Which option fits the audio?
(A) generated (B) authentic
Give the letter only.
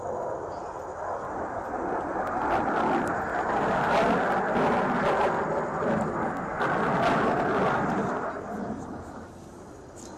B